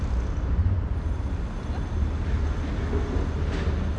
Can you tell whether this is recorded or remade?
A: recorded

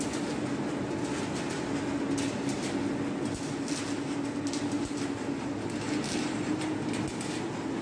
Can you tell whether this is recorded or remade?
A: recorded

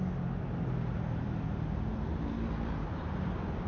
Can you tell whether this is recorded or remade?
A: recorded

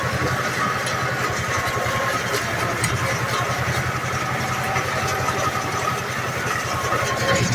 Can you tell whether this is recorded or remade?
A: recorded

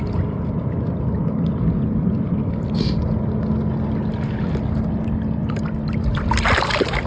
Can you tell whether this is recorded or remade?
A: recorded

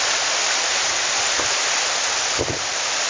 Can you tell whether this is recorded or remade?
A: recorded